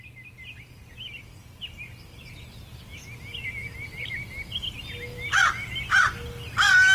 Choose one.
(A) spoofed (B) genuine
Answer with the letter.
B